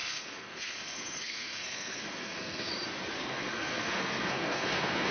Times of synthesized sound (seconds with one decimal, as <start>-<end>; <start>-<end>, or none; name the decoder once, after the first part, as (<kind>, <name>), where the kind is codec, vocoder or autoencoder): 0.0-2.7 (codec, SNAC); 3.2-5.1